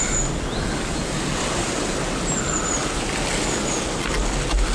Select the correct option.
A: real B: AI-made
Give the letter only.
A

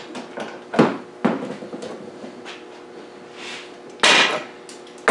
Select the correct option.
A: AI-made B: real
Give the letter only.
B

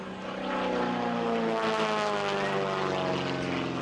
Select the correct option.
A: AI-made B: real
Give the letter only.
B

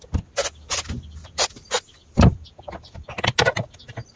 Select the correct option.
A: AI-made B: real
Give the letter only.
B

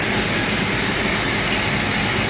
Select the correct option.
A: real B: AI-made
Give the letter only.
A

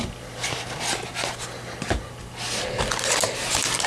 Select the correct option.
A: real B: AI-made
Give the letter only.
A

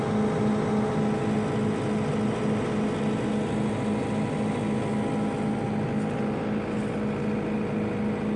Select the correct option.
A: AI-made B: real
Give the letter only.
B